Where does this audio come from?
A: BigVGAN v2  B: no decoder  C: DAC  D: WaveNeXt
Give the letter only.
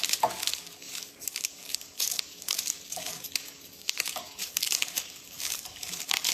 C